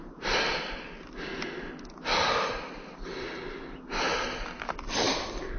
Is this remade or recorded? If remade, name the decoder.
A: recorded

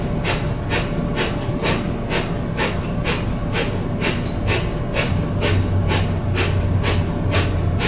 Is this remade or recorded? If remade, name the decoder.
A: recorded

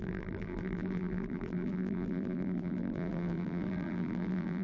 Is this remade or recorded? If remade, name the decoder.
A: remade, vocoder, BigVGAN v2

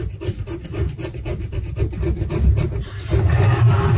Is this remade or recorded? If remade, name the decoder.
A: recorded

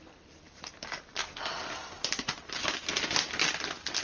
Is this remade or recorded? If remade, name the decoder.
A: recorded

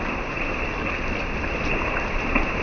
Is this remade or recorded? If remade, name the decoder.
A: remade, vocoder, BigVGAN v2